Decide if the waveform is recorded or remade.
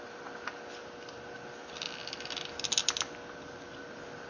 recorded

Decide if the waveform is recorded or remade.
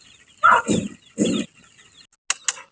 recorded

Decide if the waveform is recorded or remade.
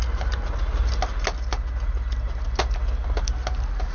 recorded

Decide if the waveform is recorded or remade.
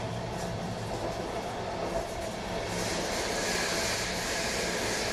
recorded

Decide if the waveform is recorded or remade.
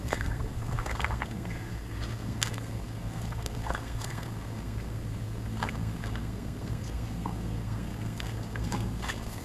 remade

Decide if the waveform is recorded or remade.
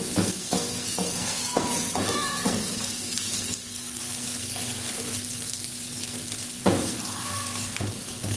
remade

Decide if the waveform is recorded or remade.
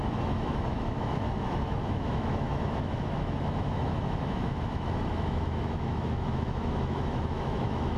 remade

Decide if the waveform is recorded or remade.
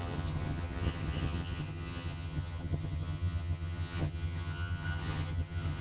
remade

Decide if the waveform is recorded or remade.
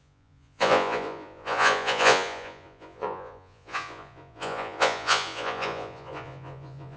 remade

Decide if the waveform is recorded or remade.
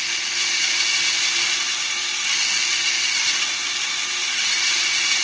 recorded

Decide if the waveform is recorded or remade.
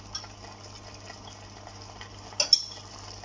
recorded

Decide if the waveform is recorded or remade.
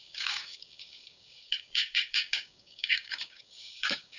remade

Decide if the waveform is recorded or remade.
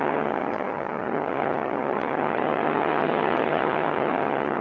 remade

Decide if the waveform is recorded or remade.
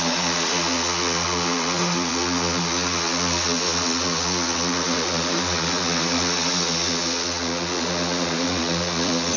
remade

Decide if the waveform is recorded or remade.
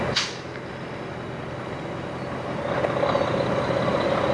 recorded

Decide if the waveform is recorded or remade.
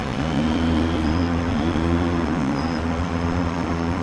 remade